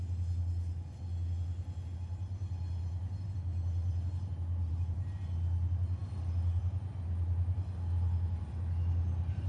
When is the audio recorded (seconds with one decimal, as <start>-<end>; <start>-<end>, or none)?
0.0-3.9; 5.1-9.5